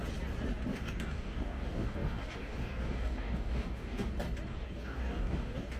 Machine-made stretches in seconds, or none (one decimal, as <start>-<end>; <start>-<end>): 0.7-4.1; 4.5-5.8